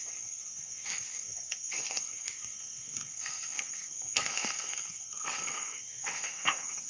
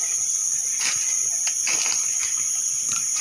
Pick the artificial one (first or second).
first